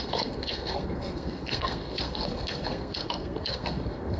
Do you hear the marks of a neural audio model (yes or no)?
yes